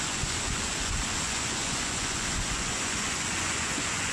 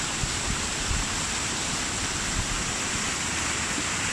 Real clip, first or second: second